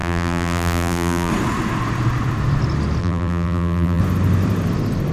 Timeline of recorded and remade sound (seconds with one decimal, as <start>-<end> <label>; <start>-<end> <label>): 0.0-1.3 remade; 1.3-3.0 recorded; 3.0-4.0 remade; 4.0-5.1 recorded